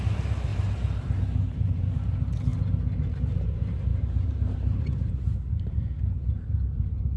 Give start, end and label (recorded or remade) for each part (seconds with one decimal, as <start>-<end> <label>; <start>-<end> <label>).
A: 0.0-0.5 remade; 0.5-1.7 recorded; 1.7-2.5 remade; 2.5-3.0 recorded; 3.0-7.2 remade